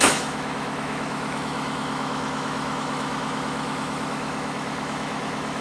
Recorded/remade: remade